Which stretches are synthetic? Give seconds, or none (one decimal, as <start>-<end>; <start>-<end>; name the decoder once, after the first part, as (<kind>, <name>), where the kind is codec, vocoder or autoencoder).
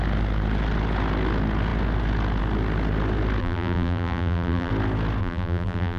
3.4-4.7 (vocoder, BigVGAN v2); 5.2-6.0